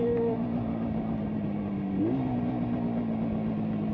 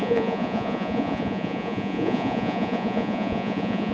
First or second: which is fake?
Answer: second